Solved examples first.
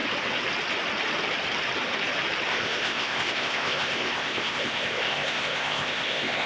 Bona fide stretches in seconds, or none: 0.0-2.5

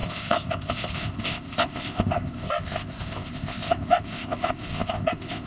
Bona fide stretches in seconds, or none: none

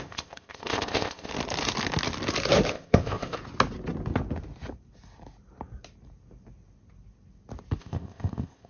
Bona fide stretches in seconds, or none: 1.3-2.7; 3.4-7.8

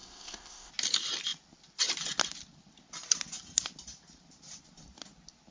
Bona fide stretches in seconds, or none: 0.7-5.5

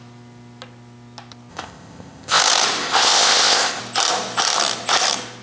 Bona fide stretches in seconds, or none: 0.0-1.5; 2.4-2.8; 3.8-5.4

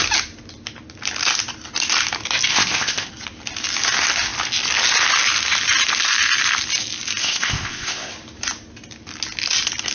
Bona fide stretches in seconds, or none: 0.0-2.5; 3.1-7.2; 8.1-9.9